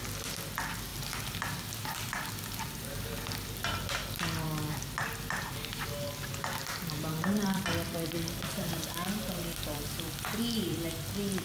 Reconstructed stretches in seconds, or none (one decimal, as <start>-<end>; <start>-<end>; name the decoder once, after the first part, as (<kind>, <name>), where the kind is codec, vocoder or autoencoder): 6.6-8.8 (vocoder, BigVGAN v2); 9.6-10.9